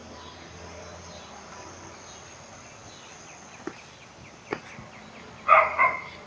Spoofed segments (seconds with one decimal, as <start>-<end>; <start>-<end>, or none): none